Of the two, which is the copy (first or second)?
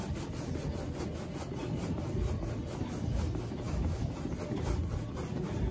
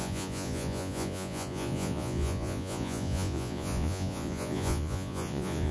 second